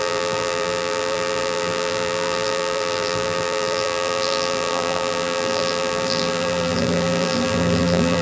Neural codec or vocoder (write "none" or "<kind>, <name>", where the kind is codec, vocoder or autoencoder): vocoder, BigVGAN v2